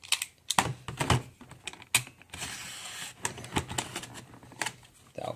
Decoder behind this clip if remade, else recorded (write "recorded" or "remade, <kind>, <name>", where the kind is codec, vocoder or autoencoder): recorded